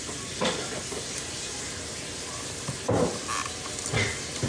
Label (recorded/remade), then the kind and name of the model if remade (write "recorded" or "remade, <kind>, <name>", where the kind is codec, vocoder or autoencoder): recorded